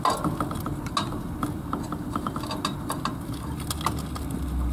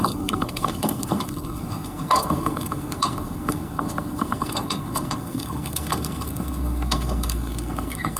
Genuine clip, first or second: first